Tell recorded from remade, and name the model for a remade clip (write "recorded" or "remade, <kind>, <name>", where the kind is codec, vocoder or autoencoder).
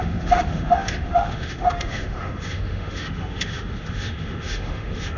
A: remade, autoencoder, DAC-VAE